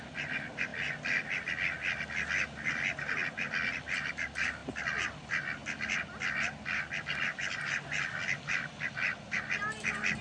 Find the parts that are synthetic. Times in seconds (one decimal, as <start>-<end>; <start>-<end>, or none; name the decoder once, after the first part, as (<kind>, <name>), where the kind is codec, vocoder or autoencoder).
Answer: none